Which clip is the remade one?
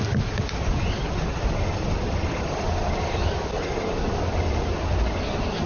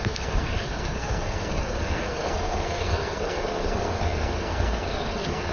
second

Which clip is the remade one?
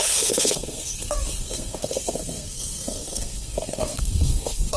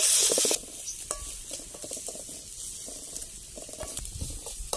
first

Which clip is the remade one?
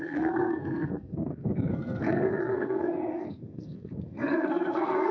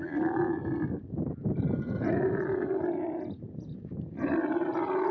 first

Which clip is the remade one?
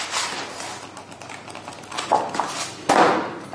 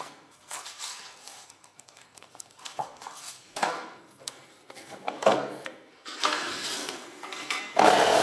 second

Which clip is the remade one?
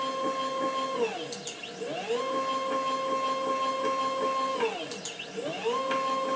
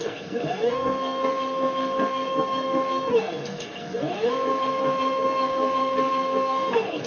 second